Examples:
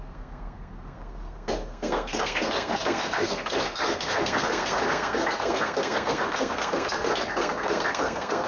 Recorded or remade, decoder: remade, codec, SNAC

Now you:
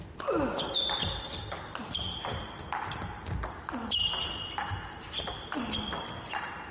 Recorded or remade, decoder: recorded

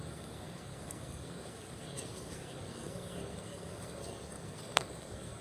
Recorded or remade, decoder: remade, codec, SNAC